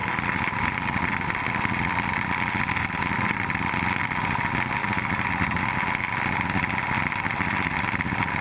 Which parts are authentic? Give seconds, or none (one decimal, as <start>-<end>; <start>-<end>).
0.0-8.4